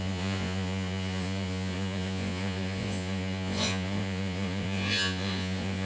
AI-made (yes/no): yes